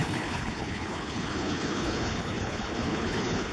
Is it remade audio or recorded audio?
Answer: remade